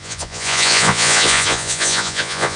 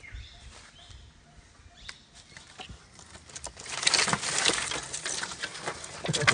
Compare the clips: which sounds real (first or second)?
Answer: second